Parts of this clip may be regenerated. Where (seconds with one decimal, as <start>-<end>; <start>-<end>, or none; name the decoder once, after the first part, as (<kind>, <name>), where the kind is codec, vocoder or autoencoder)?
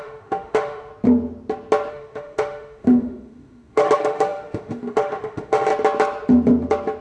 0.0-0.9 (autoencoder, DAC-VAE); 1.9-5.7